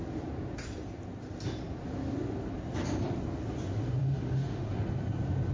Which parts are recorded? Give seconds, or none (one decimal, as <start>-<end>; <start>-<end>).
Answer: 0.0-4.0; 4.7-5.5